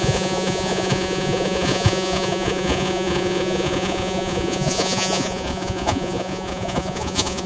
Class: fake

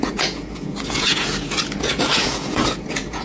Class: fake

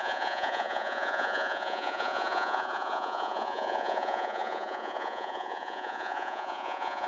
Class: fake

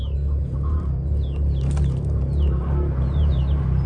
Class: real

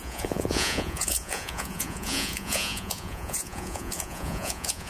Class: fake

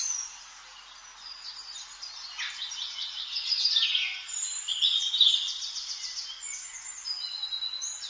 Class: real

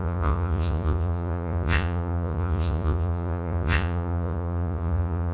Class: fake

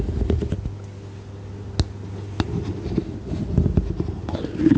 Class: real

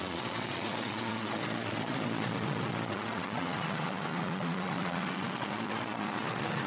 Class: fake